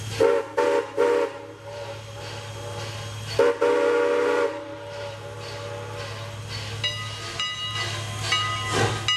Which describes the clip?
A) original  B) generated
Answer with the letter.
A